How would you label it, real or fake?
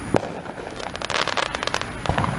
real